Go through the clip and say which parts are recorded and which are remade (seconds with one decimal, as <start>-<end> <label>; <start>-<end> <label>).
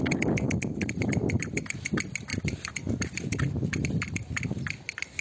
0.0-5.2 recorded